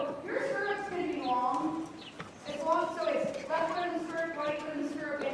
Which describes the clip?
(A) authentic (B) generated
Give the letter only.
A